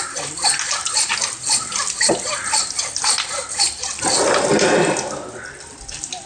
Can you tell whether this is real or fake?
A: real